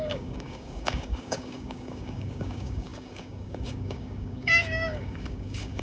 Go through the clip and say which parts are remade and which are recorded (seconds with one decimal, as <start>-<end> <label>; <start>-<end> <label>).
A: 0.0-5.8 remade